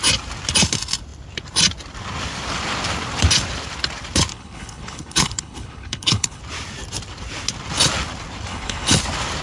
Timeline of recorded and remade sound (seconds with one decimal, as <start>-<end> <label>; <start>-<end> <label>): 0.0-4.3 recorded; 4.3-6.4 remade; 6.4-8.5 recorded; 8.5-9.0 remade; 9.0-9.4 recorded